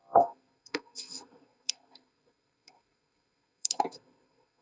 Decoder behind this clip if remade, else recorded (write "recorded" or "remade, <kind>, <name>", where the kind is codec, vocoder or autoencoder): remade, codec, SNAC